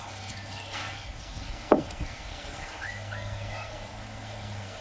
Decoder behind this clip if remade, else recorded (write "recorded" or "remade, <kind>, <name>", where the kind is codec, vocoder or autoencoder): remade, codec, SNAC